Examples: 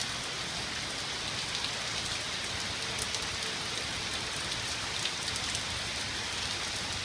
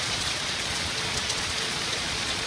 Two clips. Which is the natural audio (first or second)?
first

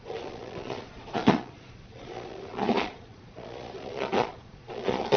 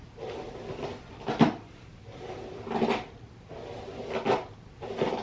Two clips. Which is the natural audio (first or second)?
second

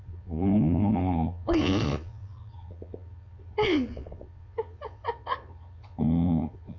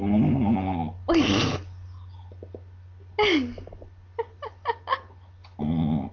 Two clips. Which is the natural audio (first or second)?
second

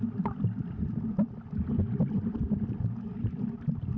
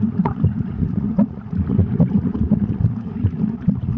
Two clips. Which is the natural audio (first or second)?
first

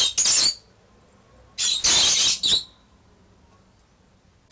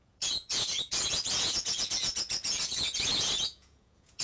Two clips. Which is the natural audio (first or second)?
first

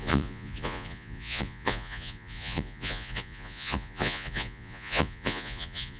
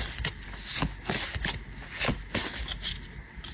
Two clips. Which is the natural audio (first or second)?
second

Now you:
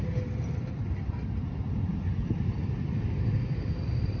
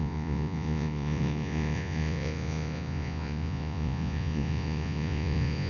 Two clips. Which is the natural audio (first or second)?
first